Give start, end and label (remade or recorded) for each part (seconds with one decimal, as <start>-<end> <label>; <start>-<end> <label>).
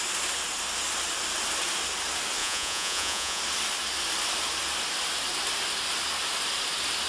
0.0-2.4 recorded; 2.4-3.4 remade; 3.4-7.1 recorded